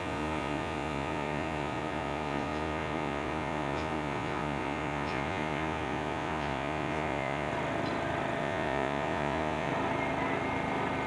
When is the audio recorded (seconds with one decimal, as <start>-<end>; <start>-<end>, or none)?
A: 7.5-8.4; 9.7-11.1

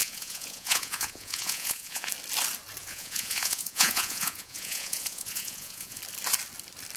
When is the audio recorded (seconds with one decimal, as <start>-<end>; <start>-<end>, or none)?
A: 2.1-2.8; 6.0-7.0

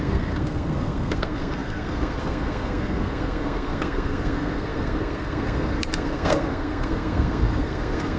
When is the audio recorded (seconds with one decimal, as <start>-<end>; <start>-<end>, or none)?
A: none

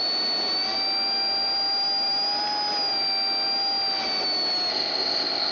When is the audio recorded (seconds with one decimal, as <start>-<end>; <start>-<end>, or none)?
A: 0.0-4.7

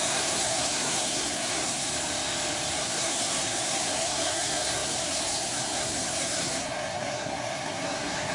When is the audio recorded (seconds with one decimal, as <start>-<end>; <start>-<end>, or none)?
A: 1.9-2.7

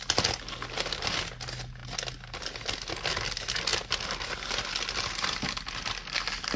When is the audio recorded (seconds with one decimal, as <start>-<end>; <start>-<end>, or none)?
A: 0.0-6.6

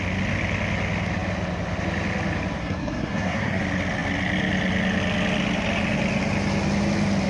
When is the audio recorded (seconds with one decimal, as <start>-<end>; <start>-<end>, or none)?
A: 0.0-2.6; 3.6-7.3

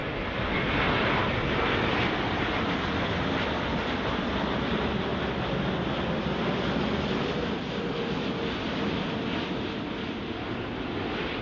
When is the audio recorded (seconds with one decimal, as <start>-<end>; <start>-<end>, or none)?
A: 0.0-11.4